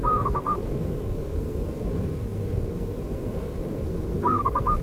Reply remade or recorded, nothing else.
remade